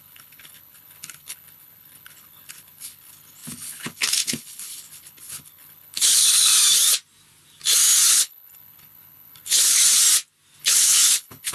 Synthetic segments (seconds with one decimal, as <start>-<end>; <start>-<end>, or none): 0.0-6.5; 8.1-9.8; 10.6-11.5